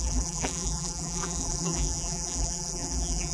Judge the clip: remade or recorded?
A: remade